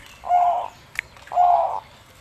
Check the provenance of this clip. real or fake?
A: real